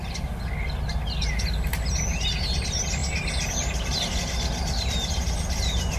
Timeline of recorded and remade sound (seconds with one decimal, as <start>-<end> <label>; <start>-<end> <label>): 0.0-6.0 recorded